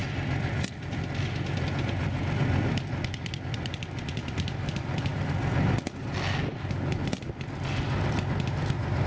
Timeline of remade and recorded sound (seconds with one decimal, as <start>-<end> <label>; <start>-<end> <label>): 0.0-9.1 recorded